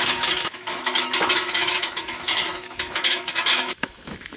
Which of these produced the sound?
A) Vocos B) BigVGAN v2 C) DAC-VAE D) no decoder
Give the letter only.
C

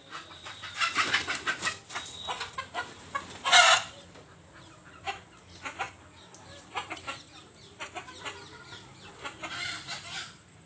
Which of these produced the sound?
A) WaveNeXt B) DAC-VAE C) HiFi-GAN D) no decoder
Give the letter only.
D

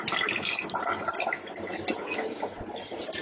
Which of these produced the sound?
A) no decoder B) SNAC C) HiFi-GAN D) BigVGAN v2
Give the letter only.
A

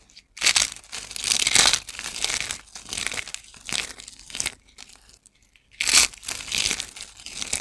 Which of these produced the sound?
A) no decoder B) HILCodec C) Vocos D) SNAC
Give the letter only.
A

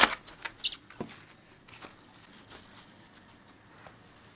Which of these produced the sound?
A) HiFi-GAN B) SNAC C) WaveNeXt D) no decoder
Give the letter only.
D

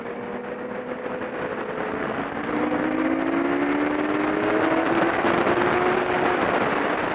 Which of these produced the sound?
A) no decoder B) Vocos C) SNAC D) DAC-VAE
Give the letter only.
A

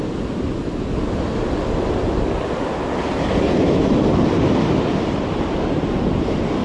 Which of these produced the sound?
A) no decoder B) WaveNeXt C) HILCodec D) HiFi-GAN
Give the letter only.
A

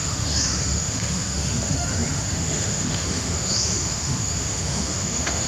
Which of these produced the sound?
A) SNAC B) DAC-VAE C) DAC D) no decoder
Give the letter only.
B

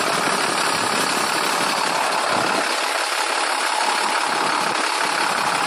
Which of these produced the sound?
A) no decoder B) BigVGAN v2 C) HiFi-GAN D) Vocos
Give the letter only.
A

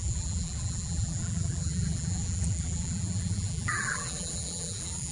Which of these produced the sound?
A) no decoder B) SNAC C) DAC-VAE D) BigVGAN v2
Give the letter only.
D